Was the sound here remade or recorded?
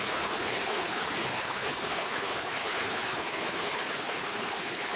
remade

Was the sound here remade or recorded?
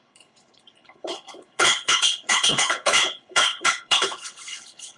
remade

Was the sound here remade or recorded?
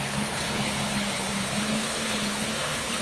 remade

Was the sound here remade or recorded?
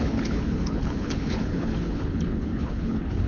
remade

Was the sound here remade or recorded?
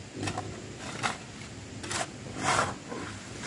recorded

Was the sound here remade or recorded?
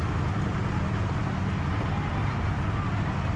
recorded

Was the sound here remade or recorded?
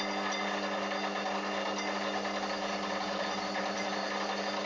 recorded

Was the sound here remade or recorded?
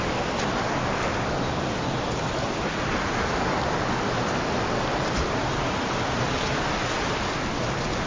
recorded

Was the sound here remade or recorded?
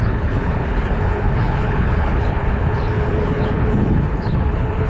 remade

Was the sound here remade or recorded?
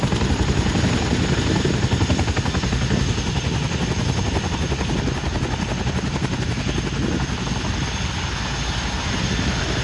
recorded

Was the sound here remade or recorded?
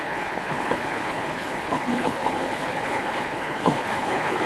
remade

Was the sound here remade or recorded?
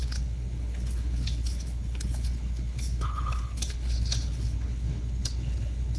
remade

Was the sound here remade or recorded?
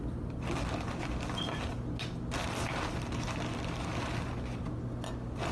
recorded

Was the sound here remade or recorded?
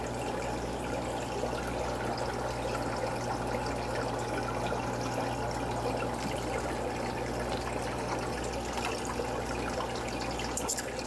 recorded